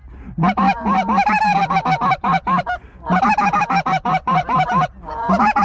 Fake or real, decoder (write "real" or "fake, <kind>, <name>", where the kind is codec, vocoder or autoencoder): fake, vocoder, BigVGAN v2